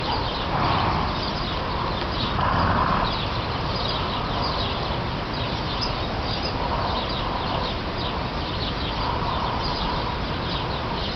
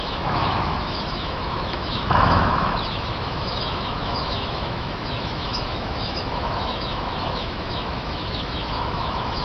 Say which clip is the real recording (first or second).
first